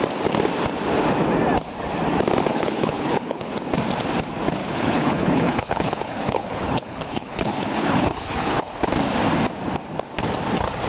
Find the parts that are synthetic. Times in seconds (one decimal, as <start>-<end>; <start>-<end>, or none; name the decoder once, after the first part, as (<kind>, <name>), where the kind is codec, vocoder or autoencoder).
2.5-3.5 (codec, HILCodec); 4.6-8.7